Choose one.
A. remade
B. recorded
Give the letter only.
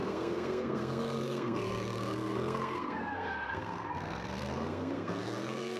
A